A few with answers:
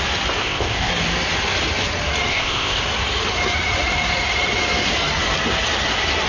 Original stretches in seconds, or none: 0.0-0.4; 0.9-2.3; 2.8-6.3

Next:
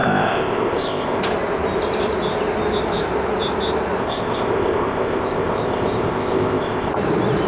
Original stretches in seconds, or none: 1.2-4.0; 6.9-7.5